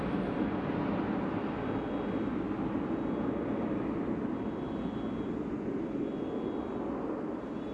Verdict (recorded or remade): recorded